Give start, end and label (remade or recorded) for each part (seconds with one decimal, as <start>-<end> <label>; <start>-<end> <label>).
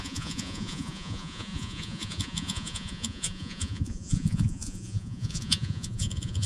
0.0-6.5 remade